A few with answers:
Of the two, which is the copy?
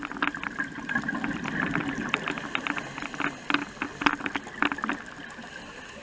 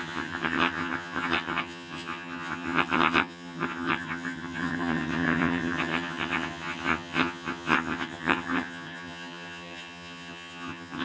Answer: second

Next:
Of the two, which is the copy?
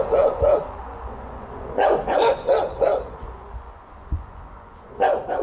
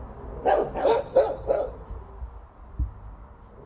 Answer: first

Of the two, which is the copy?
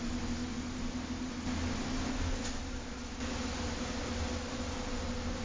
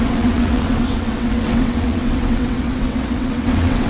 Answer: second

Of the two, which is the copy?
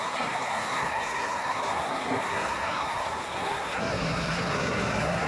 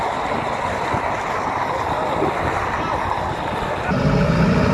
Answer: first